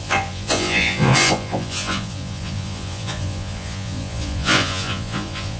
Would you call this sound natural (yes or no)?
no